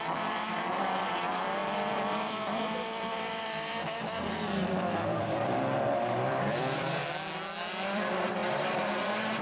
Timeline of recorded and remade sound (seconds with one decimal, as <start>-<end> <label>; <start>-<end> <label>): 0.0-7.0 remade; 7.0-7.7 recorded; 7.7-8.4 remade; 8.4-9.4 recorded